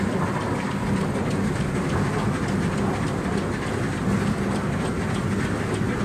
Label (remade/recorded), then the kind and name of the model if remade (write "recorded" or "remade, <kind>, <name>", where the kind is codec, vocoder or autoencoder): recorded